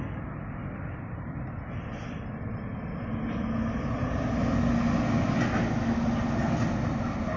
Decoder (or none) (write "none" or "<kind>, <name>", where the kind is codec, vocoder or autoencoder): none